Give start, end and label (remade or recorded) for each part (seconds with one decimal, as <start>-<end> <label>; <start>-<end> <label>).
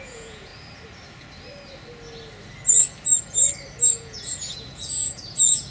0.0-0.5 remade; 0.5-3.9 recorded; 3.9-5.7 remade